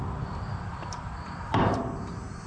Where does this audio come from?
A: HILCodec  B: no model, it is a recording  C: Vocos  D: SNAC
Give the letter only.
B